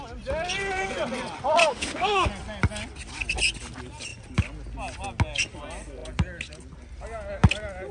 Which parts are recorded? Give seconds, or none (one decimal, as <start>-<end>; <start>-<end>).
0.0-1.6; 2.3-7.9